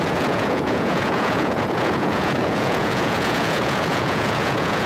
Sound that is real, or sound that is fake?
fake